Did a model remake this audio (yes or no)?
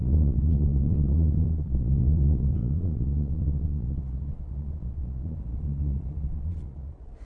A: yes